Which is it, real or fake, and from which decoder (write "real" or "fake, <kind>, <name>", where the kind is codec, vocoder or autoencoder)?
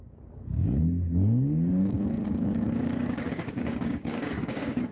fake, codec, DAC